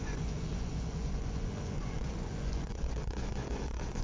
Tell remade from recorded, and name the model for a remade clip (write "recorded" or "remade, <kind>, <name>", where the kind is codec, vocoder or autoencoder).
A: remade, vocoder, Vocos